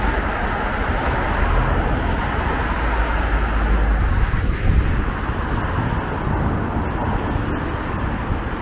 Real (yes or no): yes